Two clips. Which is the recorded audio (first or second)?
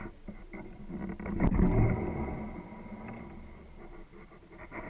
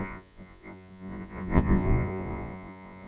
first